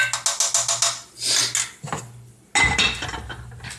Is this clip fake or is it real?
real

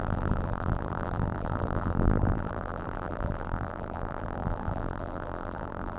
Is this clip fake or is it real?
fake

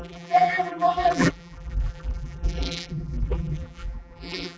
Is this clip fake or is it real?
fake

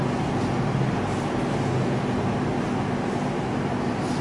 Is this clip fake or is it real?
real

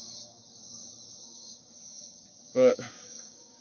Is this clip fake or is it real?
fake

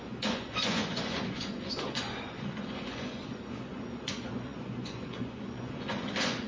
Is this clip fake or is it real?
fake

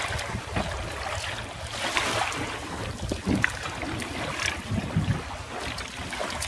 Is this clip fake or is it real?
real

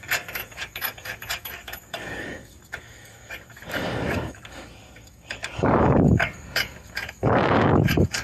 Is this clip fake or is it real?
fake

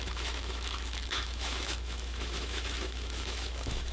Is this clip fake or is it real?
fake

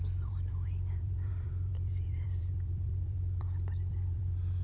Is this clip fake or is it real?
fake